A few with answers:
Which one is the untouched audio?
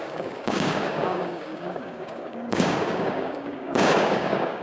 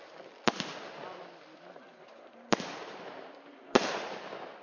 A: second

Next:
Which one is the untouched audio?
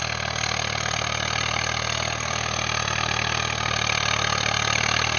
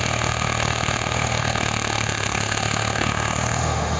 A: first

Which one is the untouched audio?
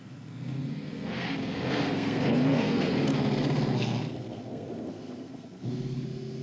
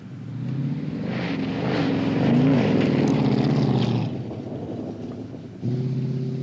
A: second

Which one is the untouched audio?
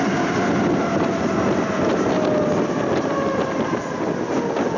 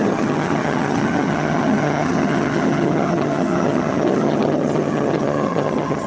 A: first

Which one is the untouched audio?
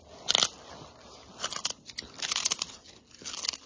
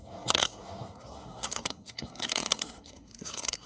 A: first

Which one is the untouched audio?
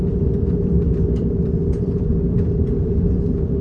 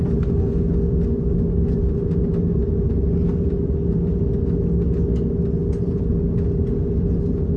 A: second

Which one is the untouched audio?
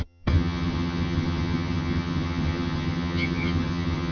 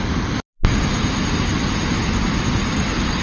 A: second